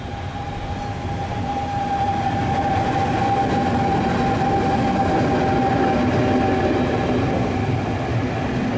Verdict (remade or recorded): recorded